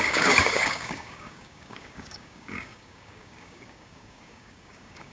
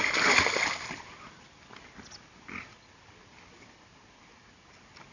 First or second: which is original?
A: second